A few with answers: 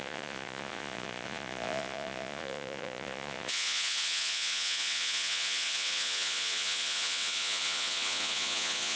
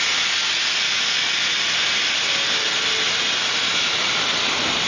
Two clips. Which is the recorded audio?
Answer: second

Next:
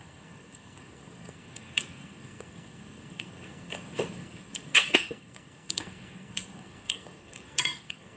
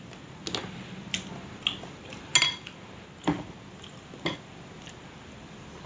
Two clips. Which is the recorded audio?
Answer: second